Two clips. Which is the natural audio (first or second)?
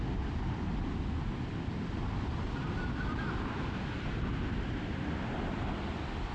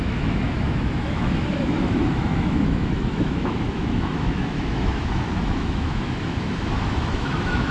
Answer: first